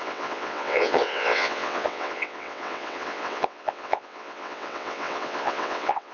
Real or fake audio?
fake